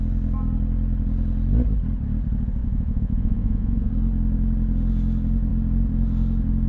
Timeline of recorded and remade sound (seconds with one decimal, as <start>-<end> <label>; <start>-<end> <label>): 0.0-2.6 recorded; 2.6-3.9 remade; 3.9-6.7 recorded